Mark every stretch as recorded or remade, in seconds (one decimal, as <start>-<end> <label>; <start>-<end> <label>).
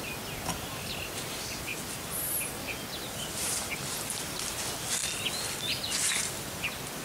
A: 0.0-7.0 recorded